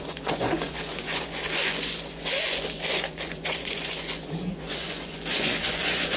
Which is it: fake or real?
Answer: fake